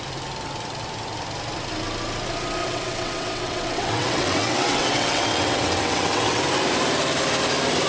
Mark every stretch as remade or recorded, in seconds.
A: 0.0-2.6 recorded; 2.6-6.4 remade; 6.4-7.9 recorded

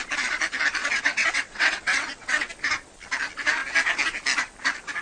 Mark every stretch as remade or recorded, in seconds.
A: 0.0-0.8 recorded; 0.8-2.5 remade; 2.5-5.0 recorded

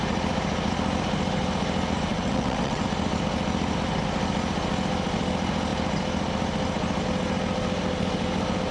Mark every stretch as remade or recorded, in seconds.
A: 0.0-2.1 recorded; 2.1-2.8 remade; 2.8-8.7 recorded

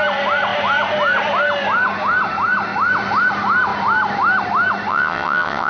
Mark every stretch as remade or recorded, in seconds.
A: 0.0-4.9 recorded; 4.9-5.7 remade

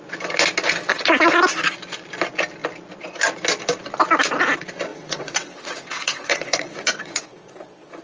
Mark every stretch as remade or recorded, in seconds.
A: 0.0-4.9 recorded; 4.9-7.5 remade; 7.5-8.0 recorded

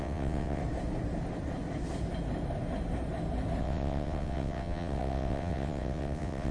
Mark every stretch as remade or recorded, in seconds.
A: 0.0-0.6 remade; 0.6-3.6 recorded; 3.6-6.5 remade